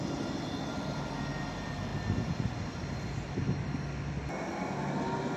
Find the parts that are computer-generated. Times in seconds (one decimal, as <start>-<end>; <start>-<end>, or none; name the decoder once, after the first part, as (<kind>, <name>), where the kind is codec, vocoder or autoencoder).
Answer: none